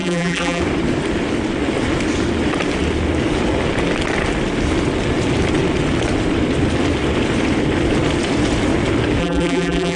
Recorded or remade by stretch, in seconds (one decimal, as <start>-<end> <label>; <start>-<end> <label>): 0.0-0.6 remade; 0.6-9.2 recorded; 9.2-10.0 remade